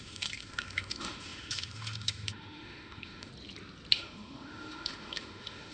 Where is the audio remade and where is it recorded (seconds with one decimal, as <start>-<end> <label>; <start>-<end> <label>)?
0.0-3.3 remade; 3.3-3.9 recorded; 3.9-5.7 remade